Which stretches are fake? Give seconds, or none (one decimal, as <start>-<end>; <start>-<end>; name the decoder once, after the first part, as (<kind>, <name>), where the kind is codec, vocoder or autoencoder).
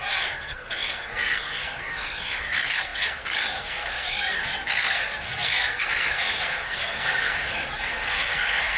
0.0-8.8 (codec, SNAC)